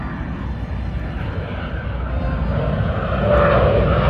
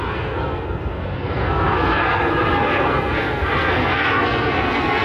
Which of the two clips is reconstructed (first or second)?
second